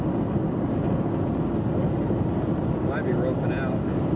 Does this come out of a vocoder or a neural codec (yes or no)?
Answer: no